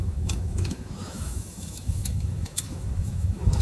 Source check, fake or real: fake